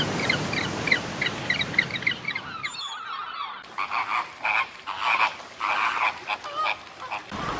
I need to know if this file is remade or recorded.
recorded